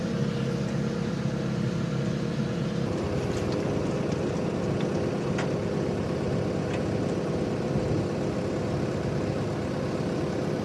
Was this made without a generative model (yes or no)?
yes